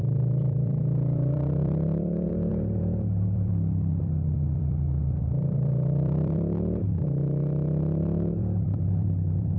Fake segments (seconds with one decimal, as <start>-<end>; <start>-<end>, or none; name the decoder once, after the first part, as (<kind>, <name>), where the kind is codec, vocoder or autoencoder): 0.0-7.0 (vocoder, BigVGAN v2); 8.4-9.6